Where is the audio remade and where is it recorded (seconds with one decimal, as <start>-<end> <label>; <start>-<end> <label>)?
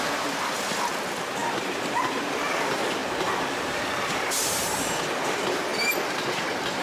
0.0-1.4 recorded; 1.4-2.5 remade; 2.5-3.0 recorded; 3.0-5.0 remade; 5.0-6.8 recorded